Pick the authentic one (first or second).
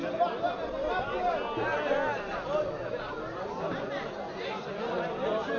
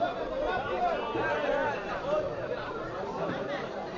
first